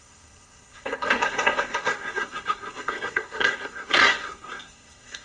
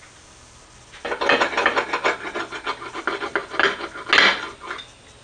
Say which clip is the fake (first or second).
first